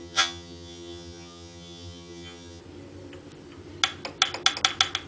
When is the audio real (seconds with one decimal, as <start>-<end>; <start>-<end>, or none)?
2.6-5.1